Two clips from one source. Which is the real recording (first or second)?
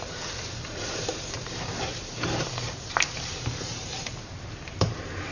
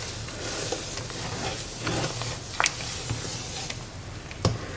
second